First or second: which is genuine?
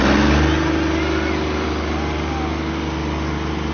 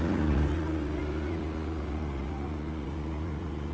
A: first